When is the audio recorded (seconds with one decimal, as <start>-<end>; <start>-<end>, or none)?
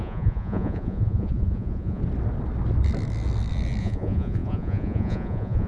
2.0-3.8